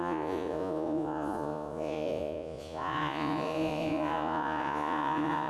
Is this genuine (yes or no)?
no